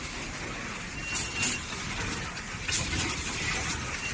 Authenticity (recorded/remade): recorded